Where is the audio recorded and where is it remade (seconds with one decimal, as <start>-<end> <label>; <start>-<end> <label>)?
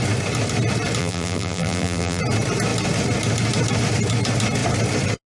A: 0.0-1.0 recorded; 1.0-2.2 remade; 2.2-5.3 recorded